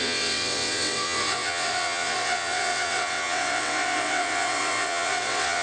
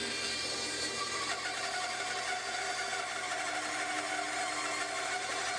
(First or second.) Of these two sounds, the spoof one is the first